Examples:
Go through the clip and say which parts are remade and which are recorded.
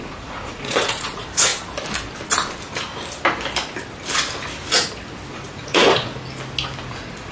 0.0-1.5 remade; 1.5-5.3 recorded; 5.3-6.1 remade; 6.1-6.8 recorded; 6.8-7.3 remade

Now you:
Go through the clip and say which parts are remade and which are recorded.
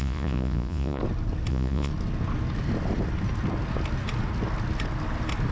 0.0-1.0 remade; 1.0-1.5 recorded; 1.5-1.9 remade; 1.9-5.5 recorded